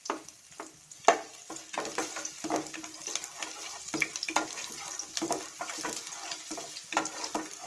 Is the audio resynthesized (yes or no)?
no